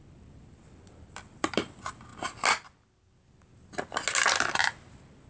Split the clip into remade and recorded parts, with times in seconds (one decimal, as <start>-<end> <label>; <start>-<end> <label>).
0.0-2.1 remade; 2.1-5.3 recorded